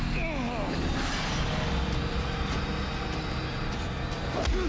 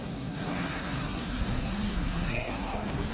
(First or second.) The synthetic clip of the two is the second